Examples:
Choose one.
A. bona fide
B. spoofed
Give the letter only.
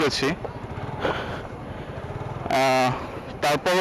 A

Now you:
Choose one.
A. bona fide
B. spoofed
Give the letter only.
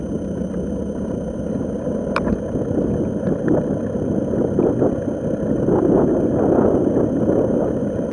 A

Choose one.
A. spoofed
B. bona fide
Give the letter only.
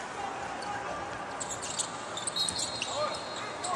B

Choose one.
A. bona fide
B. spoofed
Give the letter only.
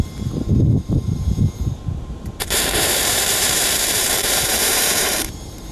B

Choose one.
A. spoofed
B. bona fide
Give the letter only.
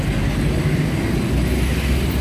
B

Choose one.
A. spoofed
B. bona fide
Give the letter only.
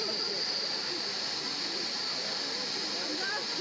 B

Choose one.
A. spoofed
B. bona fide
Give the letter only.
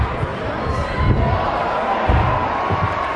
A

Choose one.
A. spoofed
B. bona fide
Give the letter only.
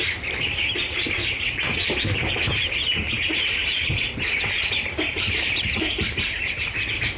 A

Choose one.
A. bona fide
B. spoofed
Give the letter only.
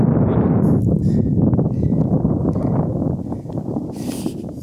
A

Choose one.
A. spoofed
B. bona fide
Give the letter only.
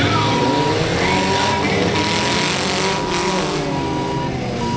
B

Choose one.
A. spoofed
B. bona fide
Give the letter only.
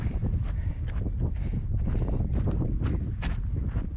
B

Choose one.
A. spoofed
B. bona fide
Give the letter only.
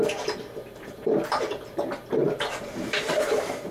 A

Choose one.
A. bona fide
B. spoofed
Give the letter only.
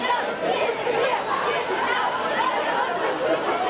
A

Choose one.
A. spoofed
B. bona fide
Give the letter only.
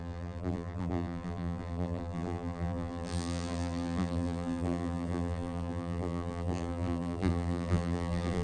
A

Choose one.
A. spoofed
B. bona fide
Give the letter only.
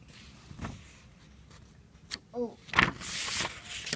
B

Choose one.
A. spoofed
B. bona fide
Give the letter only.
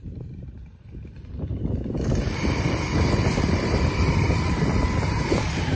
A